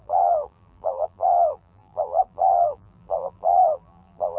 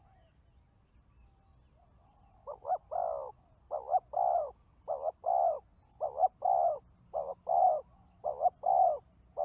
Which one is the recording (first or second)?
second